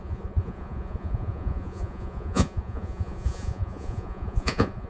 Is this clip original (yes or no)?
no